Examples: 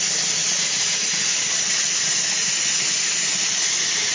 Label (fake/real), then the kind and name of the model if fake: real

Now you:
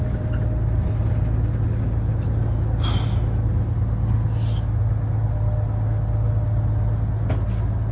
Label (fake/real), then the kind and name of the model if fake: real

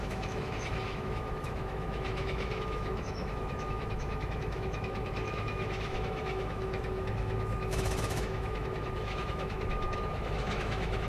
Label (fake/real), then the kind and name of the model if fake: fake, autoencoder, DAC-VAE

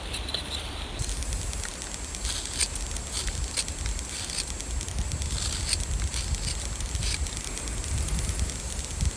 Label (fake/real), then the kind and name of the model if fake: real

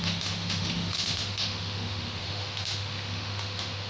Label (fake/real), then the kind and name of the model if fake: fake, autoencoder, DAC-VAE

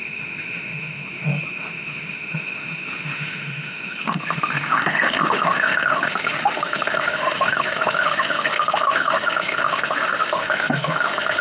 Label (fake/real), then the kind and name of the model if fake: fake, autoencoder, DAC-VAE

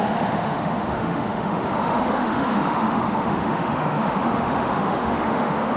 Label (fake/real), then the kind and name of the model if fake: fake, autoencoder, DAC-VAE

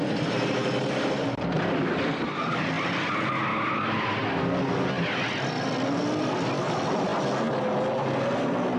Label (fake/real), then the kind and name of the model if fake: real